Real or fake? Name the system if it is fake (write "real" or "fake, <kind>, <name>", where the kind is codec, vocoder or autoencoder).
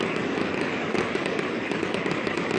fake, codec, DAC